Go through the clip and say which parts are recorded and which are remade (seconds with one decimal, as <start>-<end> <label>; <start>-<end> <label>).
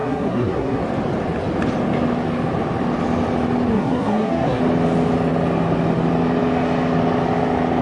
0.0-0.8 remade; 0.8-3.7 recorded; 3.7-4.6 remade; 4.6-7.8 recorded